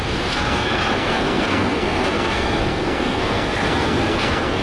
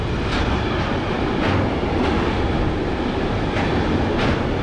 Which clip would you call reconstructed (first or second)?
first